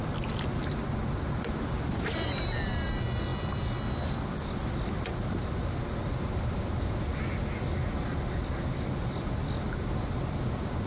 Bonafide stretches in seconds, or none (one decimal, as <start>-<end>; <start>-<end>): 0.0-10.9